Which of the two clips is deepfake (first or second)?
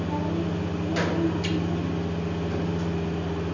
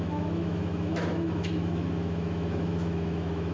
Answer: second